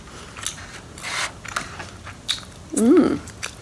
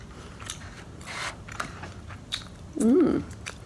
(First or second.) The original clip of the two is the first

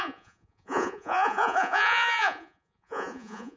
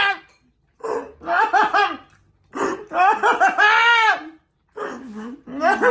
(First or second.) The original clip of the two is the second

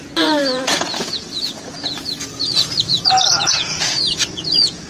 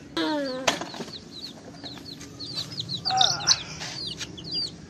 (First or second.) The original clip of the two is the second